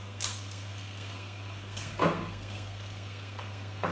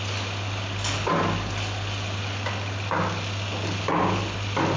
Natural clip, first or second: second